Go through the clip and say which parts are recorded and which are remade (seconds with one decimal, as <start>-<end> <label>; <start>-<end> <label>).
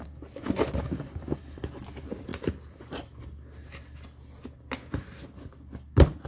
0.0-0.8 recorded; 0.8-1.4 remade; 1.4-6.3 recorded